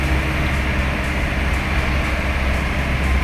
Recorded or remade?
recorded